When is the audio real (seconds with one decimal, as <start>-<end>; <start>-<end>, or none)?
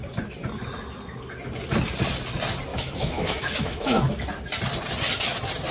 0.0-2.7; 4.0-5.7